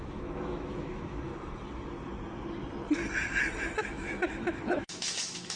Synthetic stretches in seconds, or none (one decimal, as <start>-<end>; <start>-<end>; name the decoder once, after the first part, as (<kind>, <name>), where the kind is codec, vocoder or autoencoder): 0.0-1.3 (autoencoder, DAC-VAE); 3.8-5.6